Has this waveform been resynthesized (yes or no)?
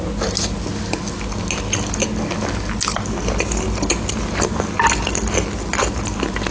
no